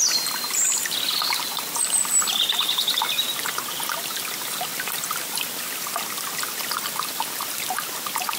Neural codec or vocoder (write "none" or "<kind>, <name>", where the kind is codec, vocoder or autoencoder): none